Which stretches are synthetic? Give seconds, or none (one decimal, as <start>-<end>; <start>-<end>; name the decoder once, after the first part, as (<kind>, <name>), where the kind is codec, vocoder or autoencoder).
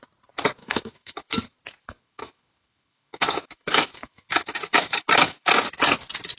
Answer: 0.6-1.4 (autoencoder, DAC-VAE); 1.8-5.6